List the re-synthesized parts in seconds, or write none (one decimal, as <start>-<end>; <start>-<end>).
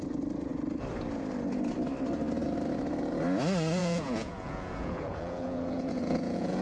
3.8-6.6